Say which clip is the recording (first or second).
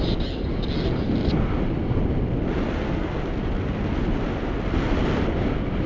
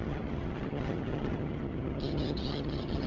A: first